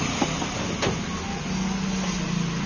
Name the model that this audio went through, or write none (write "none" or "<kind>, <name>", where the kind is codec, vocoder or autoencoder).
none